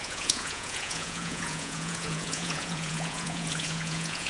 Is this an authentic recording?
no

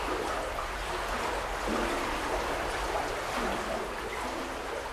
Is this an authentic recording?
yes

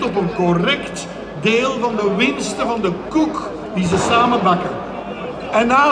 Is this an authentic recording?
yes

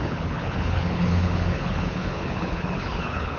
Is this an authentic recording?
no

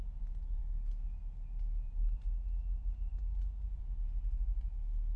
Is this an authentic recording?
yes